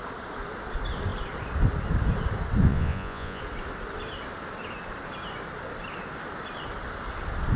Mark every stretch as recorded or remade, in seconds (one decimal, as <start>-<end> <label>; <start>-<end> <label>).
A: 0.0-2.7 recorded; 2.7-3.4 remade; 3.4-7.6 recorded